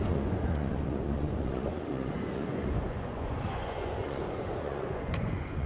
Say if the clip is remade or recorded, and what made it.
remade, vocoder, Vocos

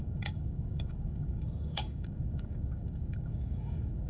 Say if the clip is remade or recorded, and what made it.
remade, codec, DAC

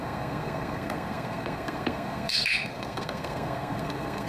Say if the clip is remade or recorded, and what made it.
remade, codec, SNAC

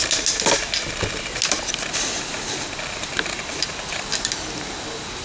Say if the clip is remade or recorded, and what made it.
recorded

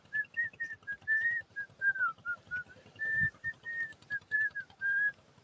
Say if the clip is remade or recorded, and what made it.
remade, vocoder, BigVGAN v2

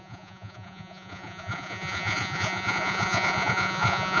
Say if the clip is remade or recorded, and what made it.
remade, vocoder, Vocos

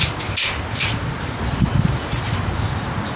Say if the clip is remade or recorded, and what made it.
recorded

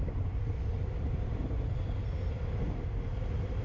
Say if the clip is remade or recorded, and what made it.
remade, vocoder, BigVGAN v2